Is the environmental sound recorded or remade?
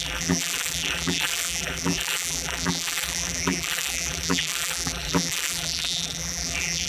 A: remade